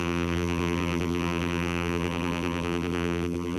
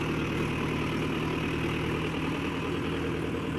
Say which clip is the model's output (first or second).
first